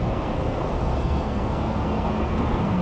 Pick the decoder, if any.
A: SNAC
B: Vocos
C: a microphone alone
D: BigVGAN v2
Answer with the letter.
A